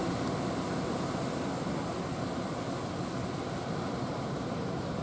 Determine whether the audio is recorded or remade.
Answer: recorded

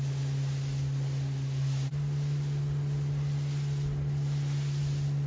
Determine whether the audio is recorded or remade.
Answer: recorded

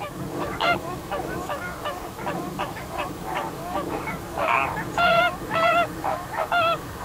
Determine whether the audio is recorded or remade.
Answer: remade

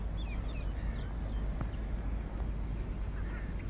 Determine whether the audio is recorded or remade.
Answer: recorded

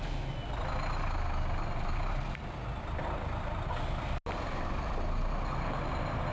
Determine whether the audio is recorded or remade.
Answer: recorded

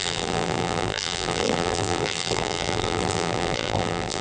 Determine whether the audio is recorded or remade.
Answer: remade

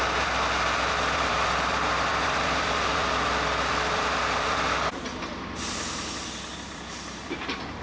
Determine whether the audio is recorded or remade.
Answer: remade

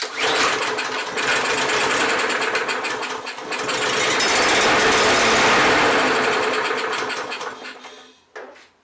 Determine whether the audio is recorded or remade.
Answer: recorded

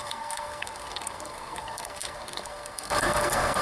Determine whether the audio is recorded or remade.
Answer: remade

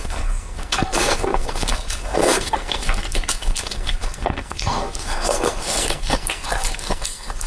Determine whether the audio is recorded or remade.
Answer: remade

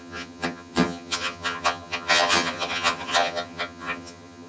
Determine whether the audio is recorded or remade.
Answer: remade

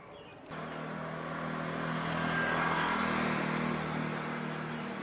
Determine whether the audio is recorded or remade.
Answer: recorded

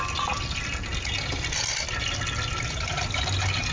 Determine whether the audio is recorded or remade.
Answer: recorded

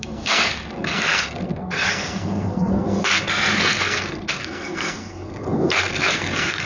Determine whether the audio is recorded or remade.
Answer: remade